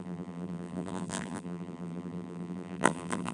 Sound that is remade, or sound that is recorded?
remade